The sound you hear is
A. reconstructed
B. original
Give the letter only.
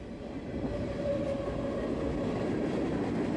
B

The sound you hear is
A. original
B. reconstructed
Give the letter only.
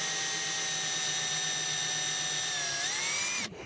A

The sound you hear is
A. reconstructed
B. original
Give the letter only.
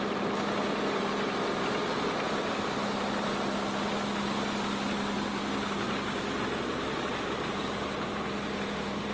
B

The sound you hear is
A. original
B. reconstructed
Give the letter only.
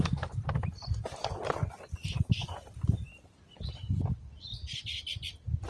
A